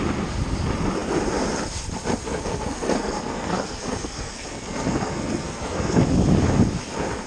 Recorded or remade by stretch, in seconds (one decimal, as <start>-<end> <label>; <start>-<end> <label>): 0.0-2.2 recorded; 2.2-6.0 remade; 6.0-7.3 recorded